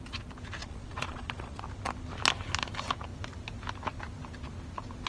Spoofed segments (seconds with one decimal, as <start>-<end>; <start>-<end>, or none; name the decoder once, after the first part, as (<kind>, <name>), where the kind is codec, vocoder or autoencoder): 0.6-1.6 (vocoder, Vocos)